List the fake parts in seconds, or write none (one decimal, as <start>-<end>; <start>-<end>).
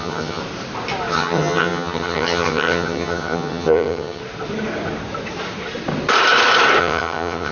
0.0-0.4; 1.1-4.2; 6.8-7.5